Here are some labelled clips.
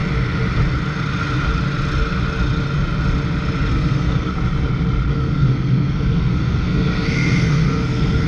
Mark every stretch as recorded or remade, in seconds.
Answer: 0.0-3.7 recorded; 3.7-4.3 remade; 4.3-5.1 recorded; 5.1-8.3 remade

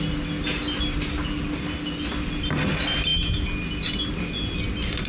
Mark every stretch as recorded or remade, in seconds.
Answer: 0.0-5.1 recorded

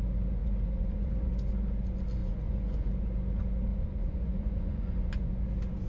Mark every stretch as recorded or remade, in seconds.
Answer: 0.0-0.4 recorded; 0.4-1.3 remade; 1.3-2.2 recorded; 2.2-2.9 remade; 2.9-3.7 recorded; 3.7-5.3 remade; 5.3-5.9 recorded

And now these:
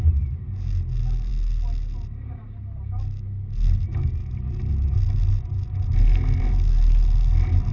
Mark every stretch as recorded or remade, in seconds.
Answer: 0.0-7.7 recorded

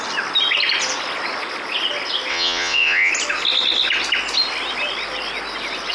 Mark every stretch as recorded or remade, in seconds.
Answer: 0.0-2.3 recorded; 2.3-3.1 remade; 3.1-5.9 recorded

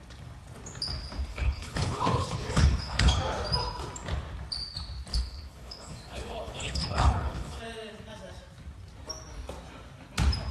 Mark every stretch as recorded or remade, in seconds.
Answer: 0.0-1.3 recorded; 1.3-3.2 remade; 3.2-5.1 recorded; 5.1-7.6 remade; 7.6-10.5 recorded